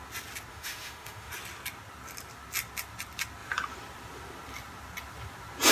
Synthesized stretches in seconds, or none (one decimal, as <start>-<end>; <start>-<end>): 0.5-1.3